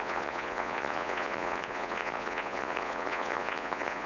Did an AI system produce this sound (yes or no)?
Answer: yes